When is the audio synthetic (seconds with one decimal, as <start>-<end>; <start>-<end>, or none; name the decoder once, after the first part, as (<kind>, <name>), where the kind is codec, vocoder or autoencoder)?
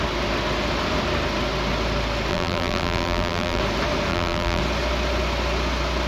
2.3-3.6 (vocoder, BigVGAN v2); 4.1-4.6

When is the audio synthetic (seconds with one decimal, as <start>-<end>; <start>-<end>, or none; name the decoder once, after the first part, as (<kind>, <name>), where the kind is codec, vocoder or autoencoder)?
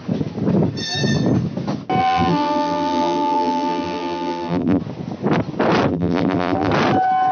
2.0-4.8 (vocoder, BigVGAN v2); 5.9-6.7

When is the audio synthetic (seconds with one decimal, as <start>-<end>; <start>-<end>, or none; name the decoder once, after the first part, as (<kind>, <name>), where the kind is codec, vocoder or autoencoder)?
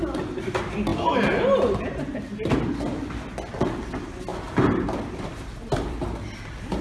4.3-5.0 (vocoder, BigVGAN v2)